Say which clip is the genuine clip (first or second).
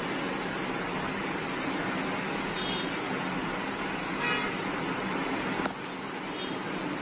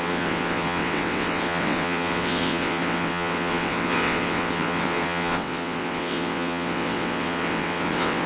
first